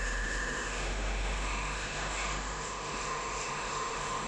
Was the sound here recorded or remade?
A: remade